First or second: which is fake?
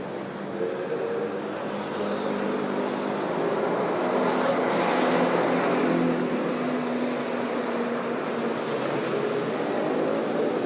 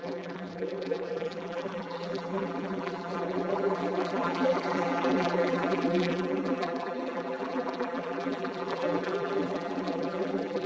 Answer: second